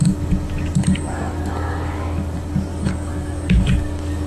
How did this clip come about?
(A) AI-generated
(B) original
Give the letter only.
A